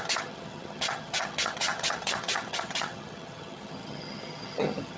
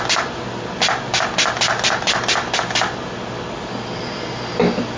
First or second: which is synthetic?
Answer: first